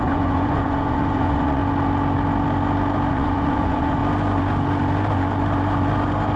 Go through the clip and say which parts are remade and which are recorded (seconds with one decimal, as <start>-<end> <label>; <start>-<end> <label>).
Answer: 0.0-1.6 remade; 1.6-3.1 recorded; 3.1-4.0 remade; 4.0-6.4 recorded